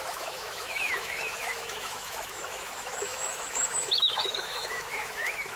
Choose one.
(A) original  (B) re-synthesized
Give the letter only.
B